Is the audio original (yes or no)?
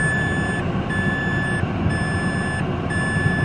yes